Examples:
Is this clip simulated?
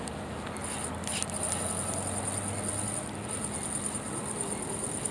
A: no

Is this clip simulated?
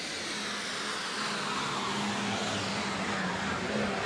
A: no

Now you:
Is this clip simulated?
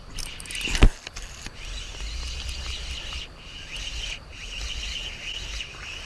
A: no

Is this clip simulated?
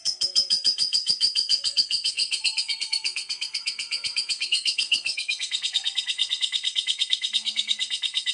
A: yes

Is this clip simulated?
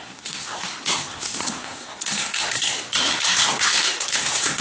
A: yes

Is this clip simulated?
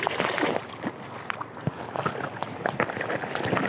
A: no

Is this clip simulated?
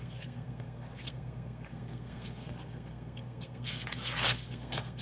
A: yes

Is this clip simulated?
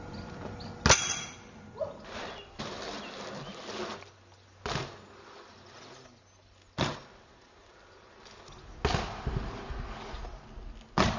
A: no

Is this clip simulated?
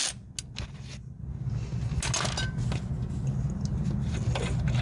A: no